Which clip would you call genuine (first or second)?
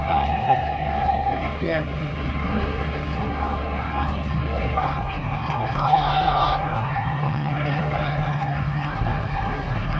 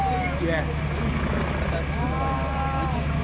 second